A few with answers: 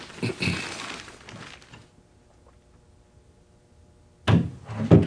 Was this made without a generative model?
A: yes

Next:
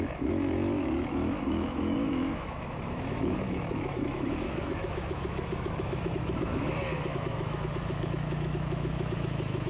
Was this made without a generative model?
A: no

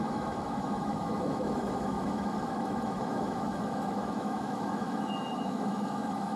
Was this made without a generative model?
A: no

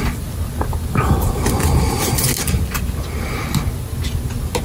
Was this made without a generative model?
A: yes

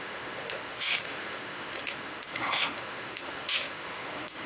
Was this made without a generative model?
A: no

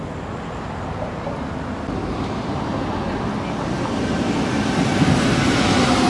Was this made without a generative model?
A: yes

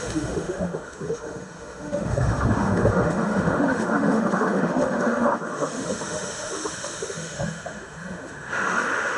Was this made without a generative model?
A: no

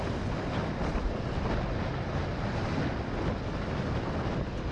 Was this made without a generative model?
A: yes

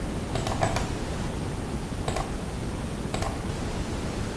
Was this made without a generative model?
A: yes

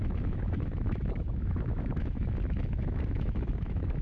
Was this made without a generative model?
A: no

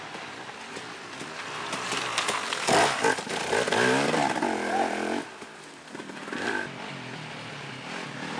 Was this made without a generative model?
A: yes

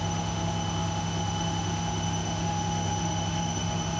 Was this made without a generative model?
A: no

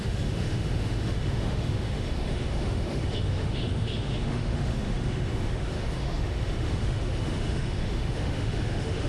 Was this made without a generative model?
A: no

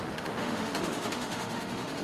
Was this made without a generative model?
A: no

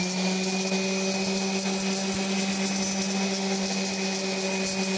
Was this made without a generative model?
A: yes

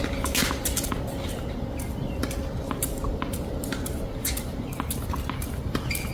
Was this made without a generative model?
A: yes